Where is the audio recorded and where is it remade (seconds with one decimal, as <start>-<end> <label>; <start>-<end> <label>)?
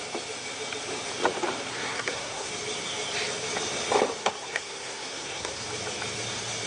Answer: 0.0-1.7 recorded; 1.7-2.5 remade; 2.5-4.2 recorded; 4.2-5.6 remade; 5.6-6.7 recorded